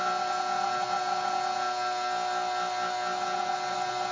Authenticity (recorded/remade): recorded